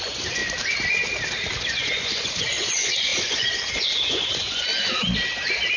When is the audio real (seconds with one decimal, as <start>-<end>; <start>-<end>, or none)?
0.4-1.7; 4.7-5.8